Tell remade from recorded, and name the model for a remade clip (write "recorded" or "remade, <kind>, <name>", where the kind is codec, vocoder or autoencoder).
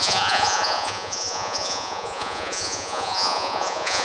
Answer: remade, vocoder, Vocos